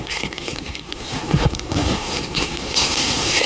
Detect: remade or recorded remade